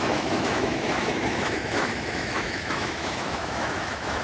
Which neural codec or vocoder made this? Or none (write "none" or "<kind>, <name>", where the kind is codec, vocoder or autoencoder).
autoencoder, DAC-VAE